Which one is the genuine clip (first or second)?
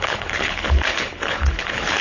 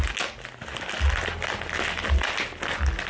second